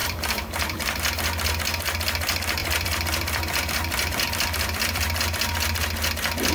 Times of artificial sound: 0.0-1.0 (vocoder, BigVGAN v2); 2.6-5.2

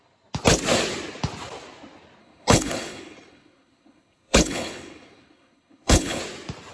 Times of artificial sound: 2.2-6.2 (codec, HILCodec)

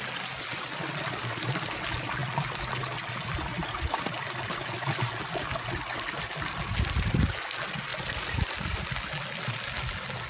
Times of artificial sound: none

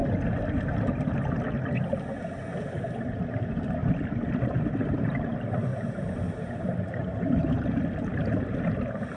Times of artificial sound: 3.8-5.3 (vocoder, BigVGAN v2); 5.7-7.6; 8.1-8.6